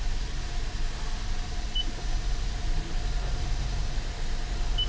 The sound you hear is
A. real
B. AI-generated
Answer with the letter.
A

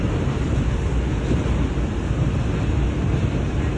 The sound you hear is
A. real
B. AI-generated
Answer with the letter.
A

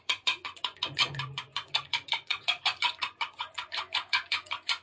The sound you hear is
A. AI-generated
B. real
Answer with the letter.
A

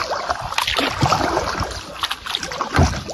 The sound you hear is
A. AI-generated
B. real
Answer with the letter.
B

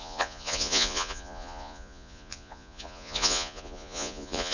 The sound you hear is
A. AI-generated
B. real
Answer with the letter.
A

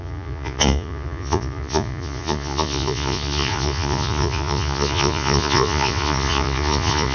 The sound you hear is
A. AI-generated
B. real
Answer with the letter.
A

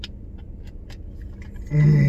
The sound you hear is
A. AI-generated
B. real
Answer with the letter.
B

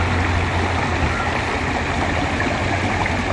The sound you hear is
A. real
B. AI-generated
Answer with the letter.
A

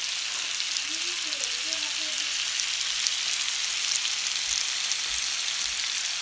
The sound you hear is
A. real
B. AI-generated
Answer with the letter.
A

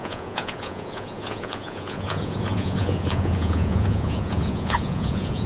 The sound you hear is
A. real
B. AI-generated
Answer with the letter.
B